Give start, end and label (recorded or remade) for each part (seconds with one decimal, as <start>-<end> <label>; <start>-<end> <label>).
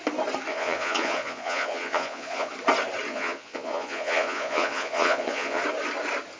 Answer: 0.0-0.5 recorded; 0.5-2.5 remade; 2.5-3.1 recorded; 3.1-5.6 remade; 5.6-6.4 recorded